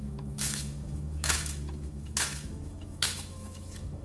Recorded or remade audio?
remade